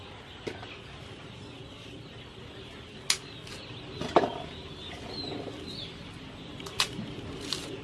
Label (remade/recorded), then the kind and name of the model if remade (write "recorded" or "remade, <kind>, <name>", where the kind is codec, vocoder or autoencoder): recorded